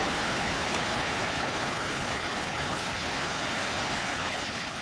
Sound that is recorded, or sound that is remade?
remade